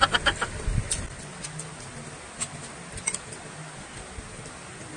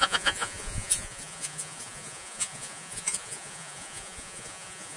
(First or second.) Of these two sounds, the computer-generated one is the second